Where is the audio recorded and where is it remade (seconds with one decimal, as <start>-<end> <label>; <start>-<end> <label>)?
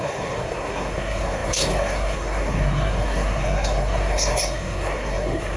0.0-5.6 remade